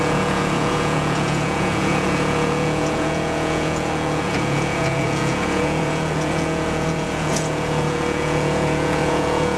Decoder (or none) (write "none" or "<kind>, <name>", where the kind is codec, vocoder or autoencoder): vocoder, Vocos